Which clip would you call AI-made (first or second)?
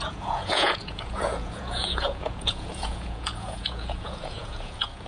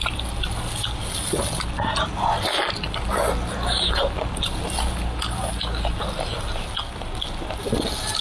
first